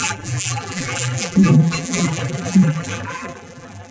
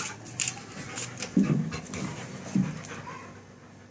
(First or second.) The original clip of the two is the second